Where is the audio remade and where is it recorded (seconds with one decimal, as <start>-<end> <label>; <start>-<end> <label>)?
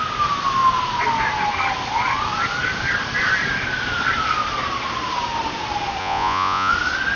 0.0-6.0 recorded; 6.0-6.7 remade; 6.7-7.2 recorded